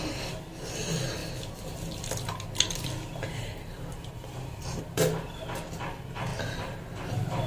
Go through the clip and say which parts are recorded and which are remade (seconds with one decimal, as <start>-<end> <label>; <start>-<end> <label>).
0.0-6.3 remade; 6.3-7.1 recorded; 7.1-7.5 remade